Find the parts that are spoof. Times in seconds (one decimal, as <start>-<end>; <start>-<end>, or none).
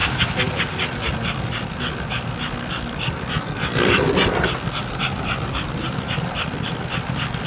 0.0-1.1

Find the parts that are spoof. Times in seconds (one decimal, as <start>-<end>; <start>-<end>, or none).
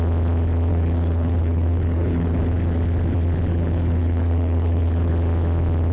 0.7-2.4; 3.5-5.1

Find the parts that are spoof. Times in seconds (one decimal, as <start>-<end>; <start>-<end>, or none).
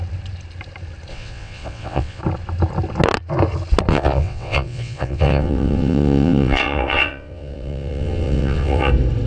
1.1-2.2; 3.9-8.9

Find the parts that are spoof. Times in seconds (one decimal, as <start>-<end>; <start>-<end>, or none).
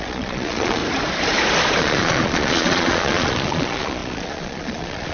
0.0-0.8; 1.8-5.1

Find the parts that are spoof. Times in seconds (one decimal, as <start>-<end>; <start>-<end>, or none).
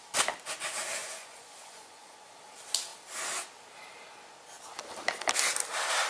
1.0-2.3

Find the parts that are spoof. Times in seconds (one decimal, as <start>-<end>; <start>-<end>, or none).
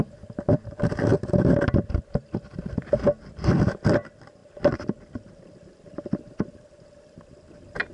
none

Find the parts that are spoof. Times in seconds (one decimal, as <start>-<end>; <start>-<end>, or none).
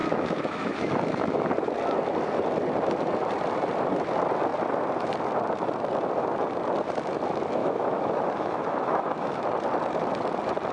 0.0-1.5; 7.6-9.4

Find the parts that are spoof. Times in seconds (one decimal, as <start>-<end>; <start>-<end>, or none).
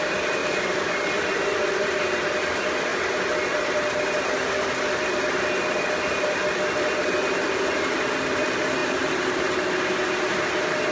0.4-2.2; 8.8-9.4